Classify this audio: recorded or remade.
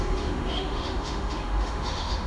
remade